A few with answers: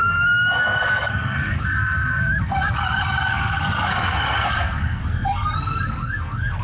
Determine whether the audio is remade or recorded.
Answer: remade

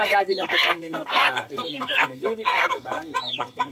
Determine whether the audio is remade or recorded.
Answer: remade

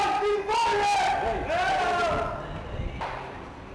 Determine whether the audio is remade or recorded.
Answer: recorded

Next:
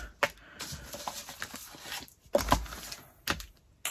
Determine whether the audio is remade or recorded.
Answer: recorded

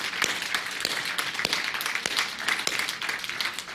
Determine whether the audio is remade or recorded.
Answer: recorded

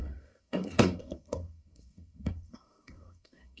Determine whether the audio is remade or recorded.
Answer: remade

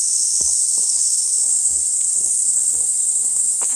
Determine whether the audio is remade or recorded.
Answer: remade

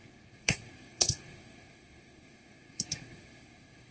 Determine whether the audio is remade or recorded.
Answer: remade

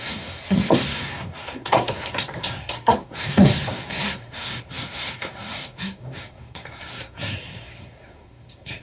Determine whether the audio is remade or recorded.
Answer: remade